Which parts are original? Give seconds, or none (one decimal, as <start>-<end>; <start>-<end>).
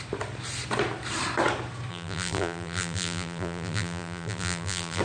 0.0-1.9